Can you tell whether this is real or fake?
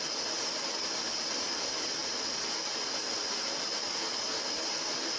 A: real